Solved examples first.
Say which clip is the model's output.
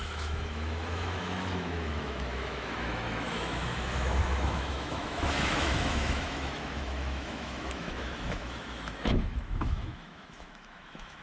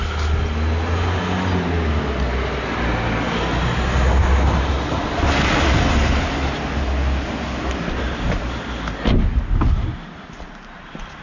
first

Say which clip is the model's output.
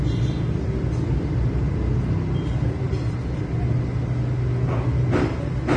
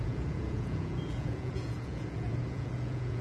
second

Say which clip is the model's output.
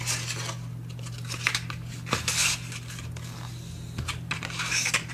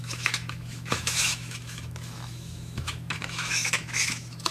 second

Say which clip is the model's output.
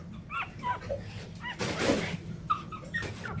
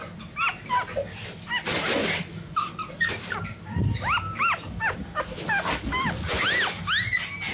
first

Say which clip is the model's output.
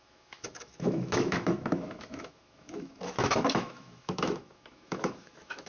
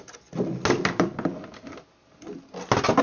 first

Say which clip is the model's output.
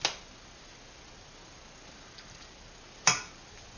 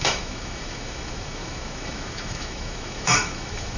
second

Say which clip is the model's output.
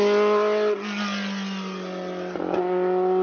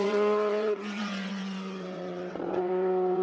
second